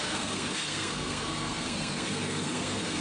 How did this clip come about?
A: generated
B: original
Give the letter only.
A